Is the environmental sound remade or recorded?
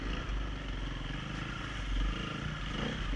recorded